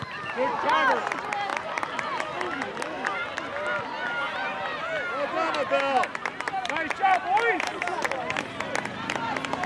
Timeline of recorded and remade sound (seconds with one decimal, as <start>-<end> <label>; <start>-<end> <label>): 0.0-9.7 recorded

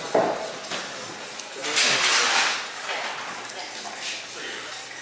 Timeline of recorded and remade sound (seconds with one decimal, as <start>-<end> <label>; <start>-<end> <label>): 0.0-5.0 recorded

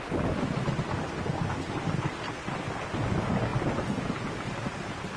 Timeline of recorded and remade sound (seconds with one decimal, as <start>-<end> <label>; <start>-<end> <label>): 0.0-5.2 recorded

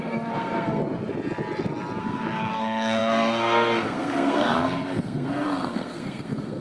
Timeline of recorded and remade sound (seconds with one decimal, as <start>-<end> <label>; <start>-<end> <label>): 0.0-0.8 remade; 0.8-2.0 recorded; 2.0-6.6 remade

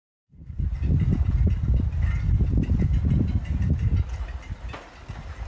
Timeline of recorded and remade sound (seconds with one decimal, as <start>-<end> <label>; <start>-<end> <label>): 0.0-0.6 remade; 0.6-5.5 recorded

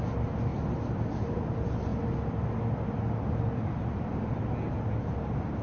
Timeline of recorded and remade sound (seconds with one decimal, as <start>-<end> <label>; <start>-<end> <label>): 0.0-5.6 recorded